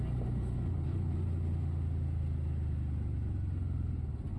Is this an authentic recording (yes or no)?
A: yes